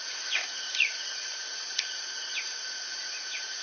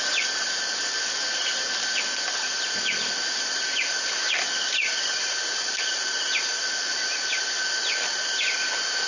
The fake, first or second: first